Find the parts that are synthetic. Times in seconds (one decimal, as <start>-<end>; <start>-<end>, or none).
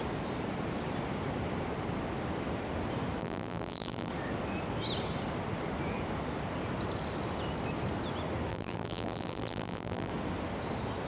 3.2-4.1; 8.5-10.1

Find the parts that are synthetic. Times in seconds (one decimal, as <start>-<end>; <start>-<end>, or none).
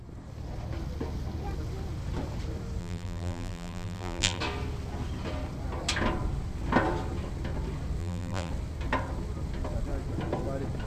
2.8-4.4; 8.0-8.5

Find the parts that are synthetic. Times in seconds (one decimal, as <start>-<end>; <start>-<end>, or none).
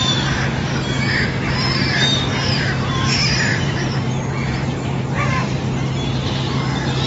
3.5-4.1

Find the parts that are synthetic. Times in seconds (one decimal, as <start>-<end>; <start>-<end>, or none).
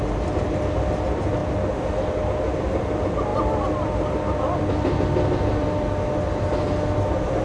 none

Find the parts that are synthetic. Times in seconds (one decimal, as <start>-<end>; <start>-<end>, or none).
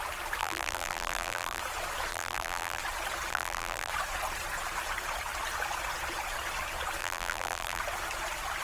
0.4-1.6; 2.1-2.8; 3.3-3.9; 7.0-7.8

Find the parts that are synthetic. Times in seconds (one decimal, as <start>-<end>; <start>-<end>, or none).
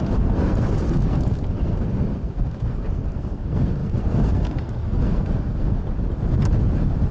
0.0-5.8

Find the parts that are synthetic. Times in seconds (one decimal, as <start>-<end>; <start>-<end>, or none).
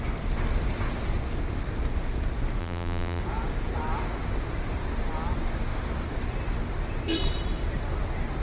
2.6-3.2